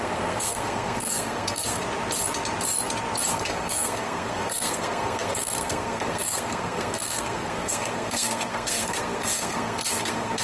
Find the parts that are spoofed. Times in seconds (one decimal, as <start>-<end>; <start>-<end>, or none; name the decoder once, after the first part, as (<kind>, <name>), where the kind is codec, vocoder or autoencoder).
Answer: 0.0-1.8 (codec, SNAC); 3.3-10.4